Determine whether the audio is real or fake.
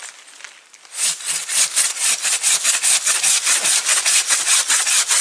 fake